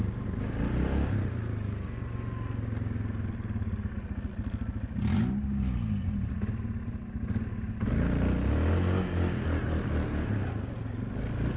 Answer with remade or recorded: recorded